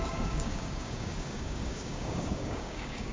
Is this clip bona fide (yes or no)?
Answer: no